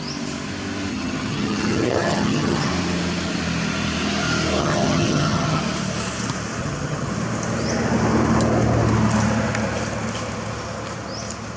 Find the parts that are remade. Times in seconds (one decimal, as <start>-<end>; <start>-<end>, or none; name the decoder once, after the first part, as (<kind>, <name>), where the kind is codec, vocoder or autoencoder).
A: 0.9-2.7 (vocoder, HiFi-GAN); 4.6-5.6; 6.6-7.1